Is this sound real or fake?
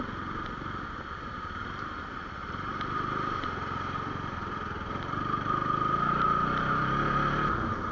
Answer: real